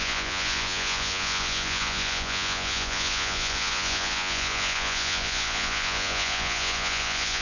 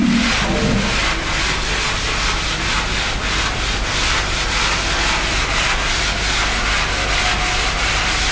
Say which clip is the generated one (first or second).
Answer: first